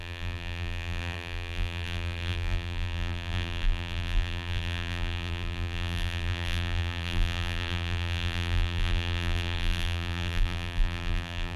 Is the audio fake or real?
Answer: fake